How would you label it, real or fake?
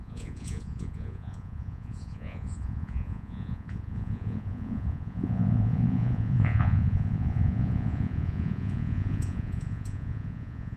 fake